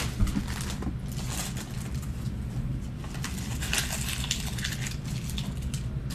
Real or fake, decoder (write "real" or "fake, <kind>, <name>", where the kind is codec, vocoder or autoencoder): real